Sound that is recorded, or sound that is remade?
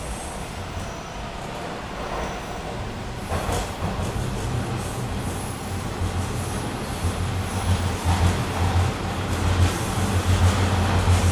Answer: recorded